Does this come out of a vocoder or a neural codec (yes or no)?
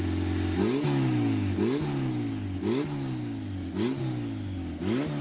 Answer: no